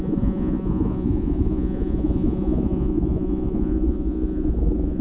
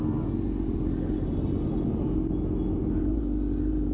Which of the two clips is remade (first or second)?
first